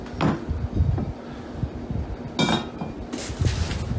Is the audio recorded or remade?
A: recorded